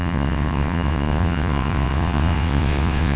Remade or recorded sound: remade